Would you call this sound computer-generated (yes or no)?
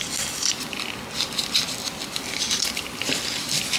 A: no